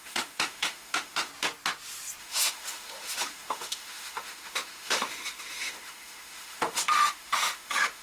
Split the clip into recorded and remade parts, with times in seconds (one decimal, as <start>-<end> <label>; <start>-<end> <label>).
0.0-1.3 remade; 1.3-2.2 recorded; 2.2-8.0 remade